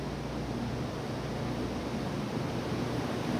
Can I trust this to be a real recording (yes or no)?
yes